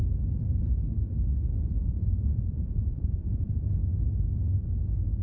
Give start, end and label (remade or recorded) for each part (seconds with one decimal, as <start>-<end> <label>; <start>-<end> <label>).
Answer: 0.0-1.9 recorded; 1.9-3.6 remade; 3.6-5.2 recorded